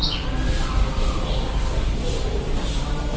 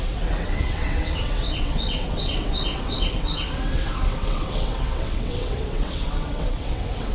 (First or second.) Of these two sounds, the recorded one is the first